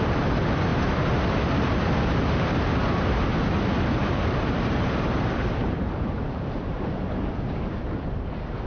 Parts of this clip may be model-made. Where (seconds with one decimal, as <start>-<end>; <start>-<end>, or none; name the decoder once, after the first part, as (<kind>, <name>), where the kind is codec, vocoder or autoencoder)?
4.0-7.3 (vocoder, BigVGAN v2)